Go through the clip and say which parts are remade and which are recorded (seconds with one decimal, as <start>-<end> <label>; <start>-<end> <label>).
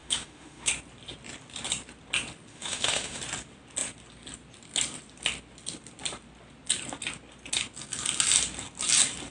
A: 0.0-0.7 remade; 0.7-2.5 recorded; 2.5-3.2 remade; 3.2-9.3 recorded